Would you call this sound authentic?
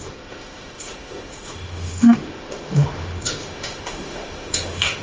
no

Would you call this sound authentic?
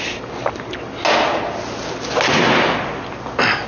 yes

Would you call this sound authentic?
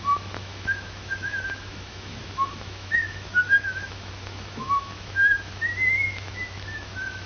no